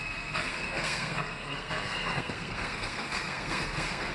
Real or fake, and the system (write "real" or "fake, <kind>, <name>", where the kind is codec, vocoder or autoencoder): fake, codec, SNAC